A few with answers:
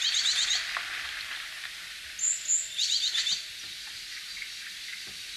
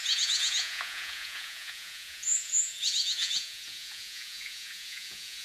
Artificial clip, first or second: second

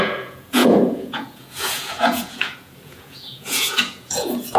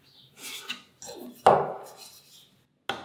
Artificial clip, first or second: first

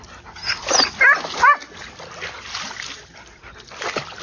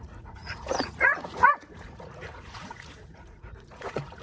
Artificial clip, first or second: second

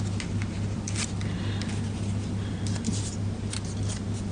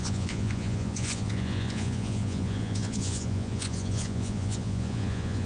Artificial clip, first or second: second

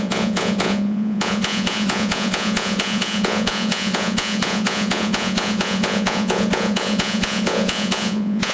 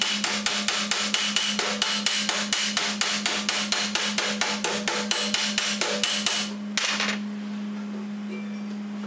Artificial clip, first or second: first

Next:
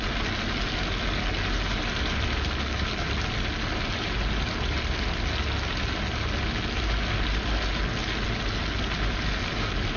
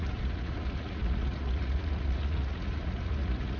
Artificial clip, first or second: second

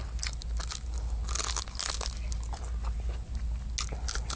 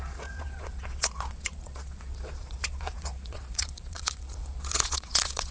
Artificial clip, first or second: second